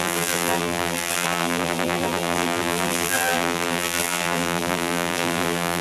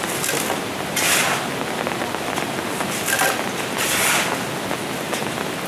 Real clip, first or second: second